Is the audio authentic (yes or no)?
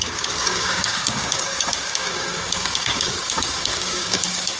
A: no